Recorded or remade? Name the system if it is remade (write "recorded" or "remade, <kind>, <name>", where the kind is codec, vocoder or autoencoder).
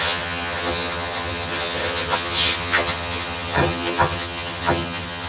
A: remade, vocoder, HiFi-GAN